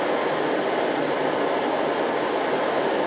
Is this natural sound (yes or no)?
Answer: yes